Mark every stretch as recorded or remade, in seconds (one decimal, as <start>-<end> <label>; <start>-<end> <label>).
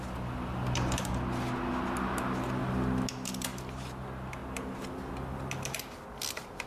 0.0-6.7 recorded